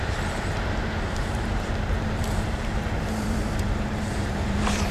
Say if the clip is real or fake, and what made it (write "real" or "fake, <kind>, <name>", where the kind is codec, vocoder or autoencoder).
fake, vocoder, BigVGAN v2